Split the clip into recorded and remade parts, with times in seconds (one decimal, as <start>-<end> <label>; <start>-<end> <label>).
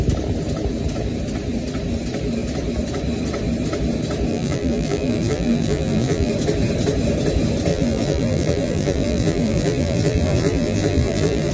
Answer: 0.0-4.3 recorded; 4.3-6.3 remade; 6.3-7.7 recorded; 7.7-11.5 remade